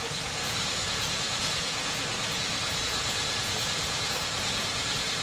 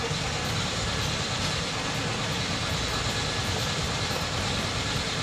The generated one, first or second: first